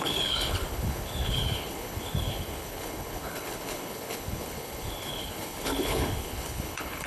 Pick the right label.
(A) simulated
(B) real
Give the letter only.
A